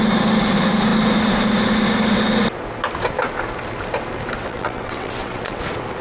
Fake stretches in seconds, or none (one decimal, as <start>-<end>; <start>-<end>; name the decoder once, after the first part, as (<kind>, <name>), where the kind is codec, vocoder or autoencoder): 4.4-5.6 (vocoder, WaveNeXt)